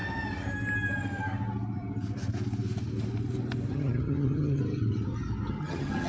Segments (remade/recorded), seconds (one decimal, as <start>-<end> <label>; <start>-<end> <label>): 0.0-3.7 recorded; 3.7-4.6 remade; 4.6-5.5 recorded; 5.5-6.1 remade